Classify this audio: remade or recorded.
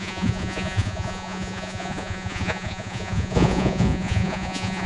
remade